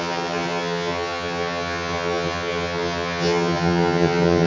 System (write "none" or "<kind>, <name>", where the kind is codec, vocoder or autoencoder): vocoder, HiFi-GAN